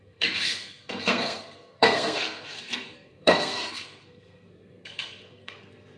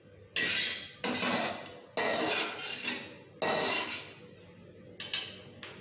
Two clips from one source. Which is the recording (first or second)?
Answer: second